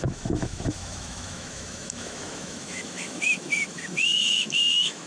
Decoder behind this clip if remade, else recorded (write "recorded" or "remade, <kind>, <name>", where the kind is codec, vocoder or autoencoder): remade, autoencoder, DAC-VAE